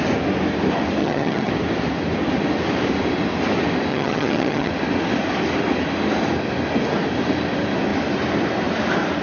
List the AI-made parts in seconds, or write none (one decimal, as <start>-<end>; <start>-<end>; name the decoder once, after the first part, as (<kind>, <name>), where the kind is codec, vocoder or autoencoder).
1.0-1.5 (vocoder, HiFi-GAN); 3.9-4.7